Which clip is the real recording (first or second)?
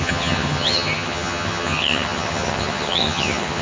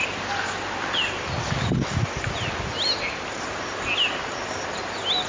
second